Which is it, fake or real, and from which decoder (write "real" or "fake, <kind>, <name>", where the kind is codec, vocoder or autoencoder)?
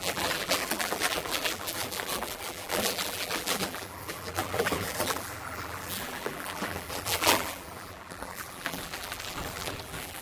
fake, vocoder, BigVGAN v2